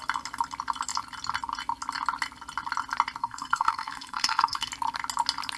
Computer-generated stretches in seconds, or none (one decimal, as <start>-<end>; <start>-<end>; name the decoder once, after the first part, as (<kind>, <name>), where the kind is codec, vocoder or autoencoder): 3.2-4.7 (codec, SNAC)